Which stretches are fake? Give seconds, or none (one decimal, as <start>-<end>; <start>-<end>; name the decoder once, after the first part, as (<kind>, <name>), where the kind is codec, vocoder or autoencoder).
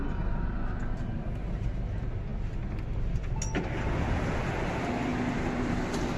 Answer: none